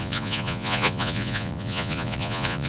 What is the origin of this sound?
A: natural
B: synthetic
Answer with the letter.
B